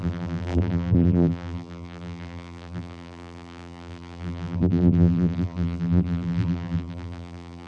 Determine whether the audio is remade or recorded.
remade